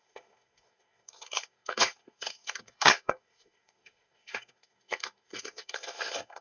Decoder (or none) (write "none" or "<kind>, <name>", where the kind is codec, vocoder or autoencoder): codec, SNAC